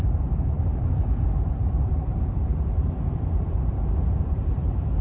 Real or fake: fake